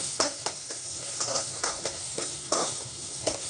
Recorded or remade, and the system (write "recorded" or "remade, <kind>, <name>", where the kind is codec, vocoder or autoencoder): remade, codec, SNAC